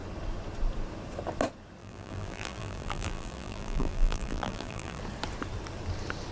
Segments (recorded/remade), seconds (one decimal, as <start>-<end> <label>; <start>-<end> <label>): 0.0-1.8 recorded; 1.8-5.0 remade; 5.0-6.3 recorded